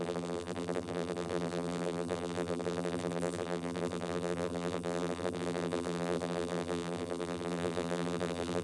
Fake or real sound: fake